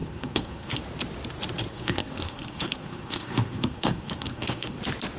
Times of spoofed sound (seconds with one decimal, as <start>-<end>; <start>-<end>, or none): 0.0-0.8; 1.7-4.8